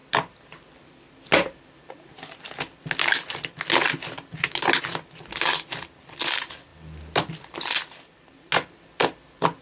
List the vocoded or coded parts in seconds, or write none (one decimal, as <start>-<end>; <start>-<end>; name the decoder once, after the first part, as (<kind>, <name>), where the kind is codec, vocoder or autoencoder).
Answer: none